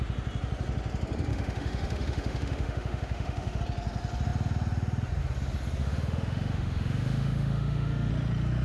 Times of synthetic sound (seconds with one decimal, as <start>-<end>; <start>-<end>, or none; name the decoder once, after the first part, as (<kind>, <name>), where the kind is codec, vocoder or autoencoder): 1.3-3.6 (autoencoder, DAC-VAE); 5.8-8.1